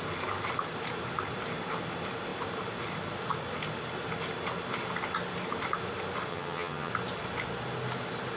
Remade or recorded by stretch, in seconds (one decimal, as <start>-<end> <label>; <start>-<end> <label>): 0.0-6.3 recorded; 6.3-6.9 remade; 6.9-8.4 recorded